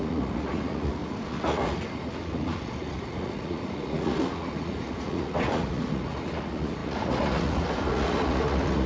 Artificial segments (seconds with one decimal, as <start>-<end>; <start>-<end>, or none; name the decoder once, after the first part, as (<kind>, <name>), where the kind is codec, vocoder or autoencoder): 0.0-8.9 (vocoder, Vocos)